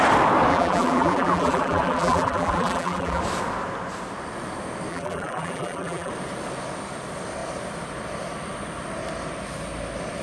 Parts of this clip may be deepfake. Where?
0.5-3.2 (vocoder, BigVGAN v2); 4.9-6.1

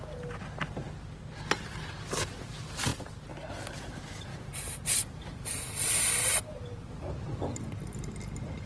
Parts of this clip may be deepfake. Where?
4.3-7.1 (vocoder, BigVGAN v2)

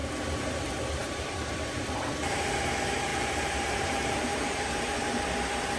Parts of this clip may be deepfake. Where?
0.0-0.6 (vocoder, BigVGAN v2); 1.0-2.0; 3.1-5.1